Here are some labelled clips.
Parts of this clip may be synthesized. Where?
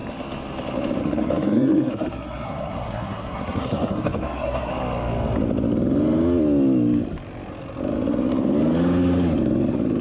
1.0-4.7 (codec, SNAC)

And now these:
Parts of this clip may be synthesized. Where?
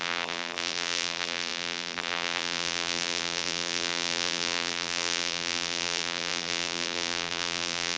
0.0-8.0 (vocoder, BigVGAN v2)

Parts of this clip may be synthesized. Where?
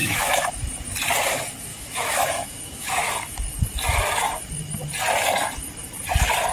0.0-0.5 (autoencoder, DAC-VAE); 1.7-3.1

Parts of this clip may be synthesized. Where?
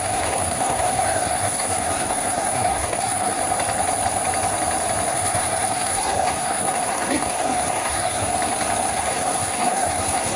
0.0-3.4 (codec, SNAC); 5.1-8.3; 8.9-10.4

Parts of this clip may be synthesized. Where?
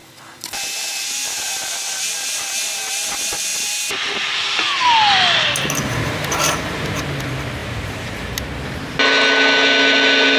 3.5-7.0 (vocoder, BigVGAN v2); 7.6-8.4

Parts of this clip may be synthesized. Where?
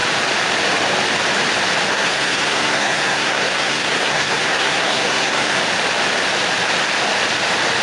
1.9-5.6 (codec, SNAC)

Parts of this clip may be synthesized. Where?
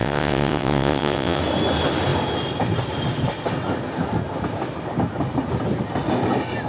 0.0-1.4 (vocoder, WaveNeXt)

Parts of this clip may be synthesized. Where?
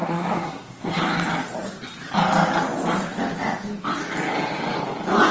0.0-1.0 (codec, SNAC)